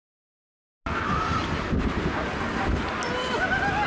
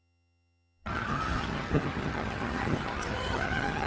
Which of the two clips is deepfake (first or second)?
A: second